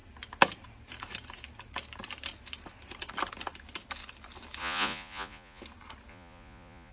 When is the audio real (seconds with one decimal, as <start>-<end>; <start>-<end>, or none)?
0.0-4.6; 5.6-6.1